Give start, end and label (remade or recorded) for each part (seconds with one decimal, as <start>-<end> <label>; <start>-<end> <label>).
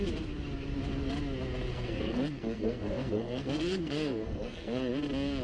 0.0-1.7 recorded; 1.7-4.9 remade; 4.9-5.4 recorded